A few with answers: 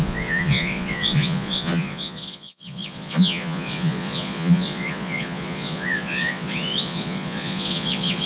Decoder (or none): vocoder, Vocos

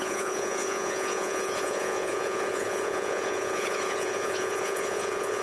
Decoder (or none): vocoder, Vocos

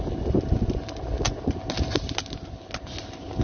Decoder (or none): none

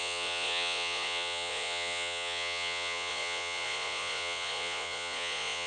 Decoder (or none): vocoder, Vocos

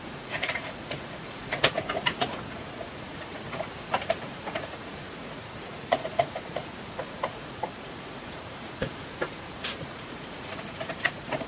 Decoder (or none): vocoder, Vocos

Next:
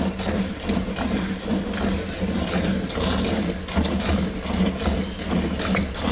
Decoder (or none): none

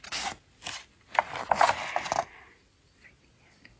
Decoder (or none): none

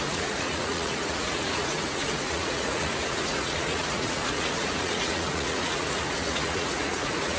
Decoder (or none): vocoder, Vocos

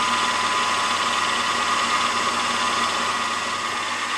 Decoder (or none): none